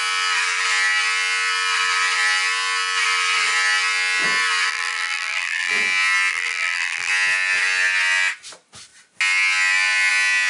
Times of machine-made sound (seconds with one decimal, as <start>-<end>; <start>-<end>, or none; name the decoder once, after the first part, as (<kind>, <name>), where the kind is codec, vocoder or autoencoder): 4.7-5.7 (vocoder, BigVGAN v2); 6.3-7.1